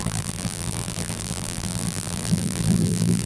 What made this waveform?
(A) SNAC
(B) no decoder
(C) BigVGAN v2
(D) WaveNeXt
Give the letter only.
C